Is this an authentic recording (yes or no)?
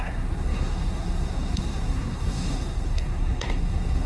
no